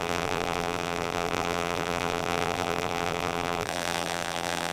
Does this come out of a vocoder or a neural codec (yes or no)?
yes